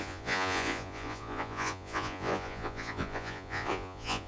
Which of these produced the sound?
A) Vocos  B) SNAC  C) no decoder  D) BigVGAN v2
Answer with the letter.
A